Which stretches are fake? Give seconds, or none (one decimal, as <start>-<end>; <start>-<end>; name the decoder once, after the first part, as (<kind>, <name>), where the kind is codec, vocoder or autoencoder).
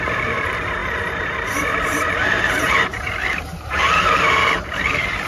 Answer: 0.0-5.3 (vocoder, BigVGAN v2)